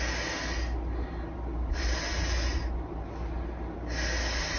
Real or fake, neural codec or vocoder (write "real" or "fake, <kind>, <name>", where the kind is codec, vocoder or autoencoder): real